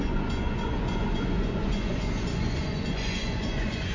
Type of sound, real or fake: fake